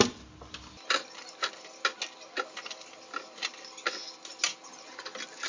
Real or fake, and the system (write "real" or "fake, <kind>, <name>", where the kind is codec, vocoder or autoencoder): real